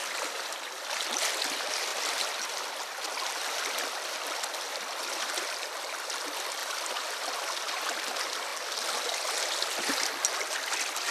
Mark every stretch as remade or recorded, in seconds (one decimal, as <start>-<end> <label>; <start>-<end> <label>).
0.0-1.3 remade; 1.3-1.9 recorded; 1.9-4.2 remade; 4.2-6.6 recorded; 6.6-7.3 remade; 7.3-11.1 recorded